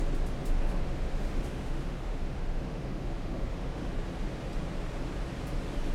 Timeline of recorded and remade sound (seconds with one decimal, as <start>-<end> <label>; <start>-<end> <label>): 0.0-0.4 recorded; 0.4-3.9 remade; 3.9-5.9 recorded